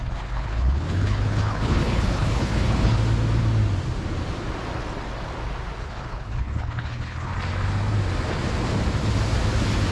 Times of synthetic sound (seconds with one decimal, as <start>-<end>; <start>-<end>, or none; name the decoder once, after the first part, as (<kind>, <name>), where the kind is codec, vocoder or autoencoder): 0.0-3.0 (codec, HILCodec); 5.8-7.3

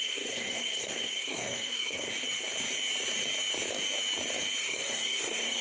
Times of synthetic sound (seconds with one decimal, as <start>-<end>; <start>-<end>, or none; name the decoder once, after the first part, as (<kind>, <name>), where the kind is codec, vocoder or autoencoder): 0.0-2.1 (codec, SNAC); 4.6-5.6

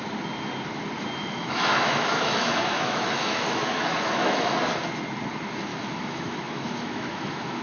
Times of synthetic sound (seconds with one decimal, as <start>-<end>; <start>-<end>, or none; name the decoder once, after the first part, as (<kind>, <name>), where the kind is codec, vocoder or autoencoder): 1.2-4.6 (autoencoder, DAC-VAE); 5.7-7.6

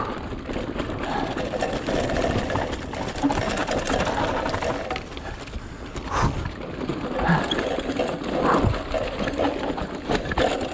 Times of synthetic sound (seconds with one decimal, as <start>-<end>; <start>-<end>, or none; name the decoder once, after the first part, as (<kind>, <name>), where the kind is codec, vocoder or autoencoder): none

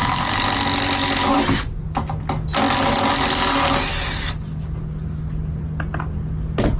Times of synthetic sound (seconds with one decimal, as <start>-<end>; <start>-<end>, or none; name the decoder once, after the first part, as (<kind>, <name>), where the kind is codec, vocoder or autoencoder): none